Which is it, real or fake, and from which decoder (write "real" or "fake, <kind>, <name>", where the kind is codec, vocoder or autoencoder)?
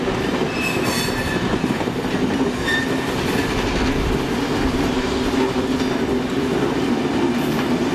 real